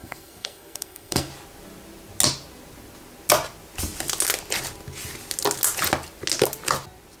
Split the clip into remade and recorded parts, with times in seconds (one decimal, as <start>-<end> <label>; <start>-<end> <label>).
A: 0.0-1.3 remade; 1.3-7.2 recorded